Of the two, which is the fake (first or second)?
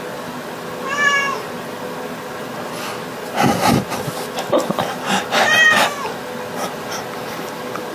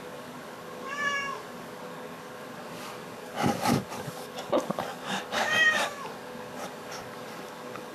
second